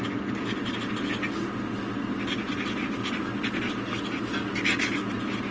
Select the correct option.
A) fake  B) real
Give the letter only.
B